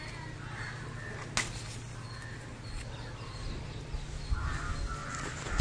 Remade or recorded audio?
recorded